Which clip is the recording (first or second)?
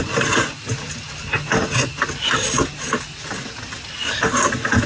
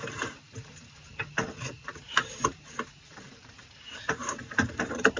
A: first